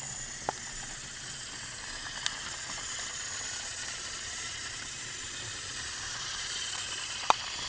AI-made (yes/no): no